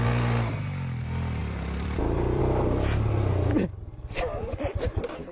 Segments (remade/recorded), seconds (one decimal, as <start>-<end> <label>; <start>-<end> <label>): 0.0-1.4 recorded; 1.4-2.4 remade; 2.4-5.3 recorded